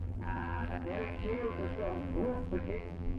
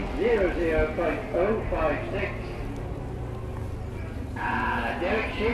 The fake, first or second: first